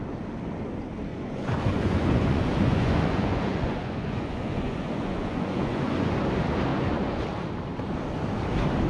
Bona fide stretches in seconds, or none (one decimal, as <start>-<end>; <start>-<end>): 0.0-1.1; 6.1-6.7; 7.2-8.9